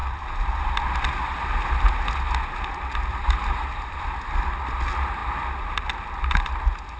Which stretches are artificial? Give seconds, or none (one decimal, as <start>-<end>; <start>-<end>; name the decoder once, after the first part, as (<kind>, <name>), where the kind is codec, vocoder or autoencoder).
3.1-4.6 (vocoder, BigVGAN v2)